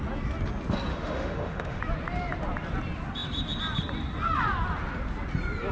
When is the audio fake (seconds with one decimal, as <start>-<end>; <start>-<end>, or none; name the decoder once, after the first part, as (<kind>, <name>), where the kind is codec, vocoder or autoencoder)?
0.9-1.8 (autoencoder, DAC-VAE)

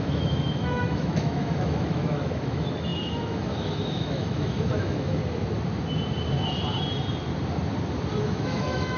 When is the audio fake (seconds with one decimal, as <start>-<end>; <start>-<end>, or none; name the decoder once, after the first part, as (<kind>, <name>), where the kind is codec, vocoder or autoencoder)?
0.0-5.2 (autoencoder, DAC-VAE); 8.2-9.0

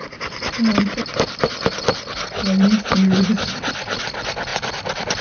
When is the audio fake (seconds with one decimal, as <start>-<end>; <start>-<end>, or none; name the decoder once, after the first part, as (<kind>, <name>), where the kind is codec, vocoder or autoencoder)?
none

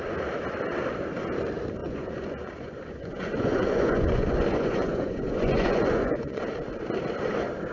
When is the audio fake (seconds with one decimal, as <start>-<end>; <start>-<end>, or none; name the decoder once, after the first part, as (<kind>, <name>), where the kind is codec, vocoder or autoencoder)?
1.8-6.4 (vocoder, Vocos)